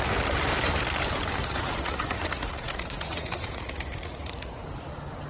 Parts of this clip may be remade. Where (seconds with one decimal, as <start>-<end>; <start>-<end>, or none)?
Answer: 1.4-4.6